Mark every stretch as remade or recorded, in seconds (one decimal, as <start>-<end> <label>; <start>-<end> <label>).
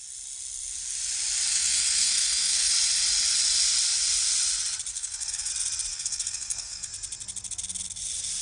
0.0-1.5 recorded; 1.5-2.7 remade; 2.7-4.9 recorded; 4.9-5.5 remade; 5.5-5.9 recorded; 5.9-6.9 remade; 6.9-8.4 recorded